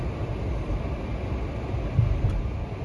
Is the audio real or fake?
real